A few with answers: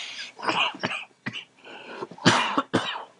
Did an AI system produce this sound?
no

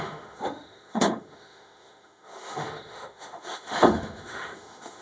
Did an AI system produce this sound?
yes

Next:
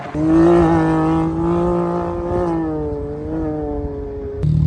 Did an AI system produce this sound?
no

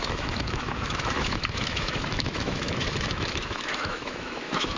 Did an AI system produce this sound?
yes